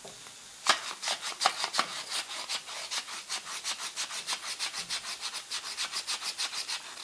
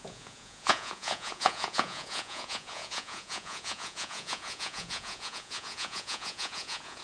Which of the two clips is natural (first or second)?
first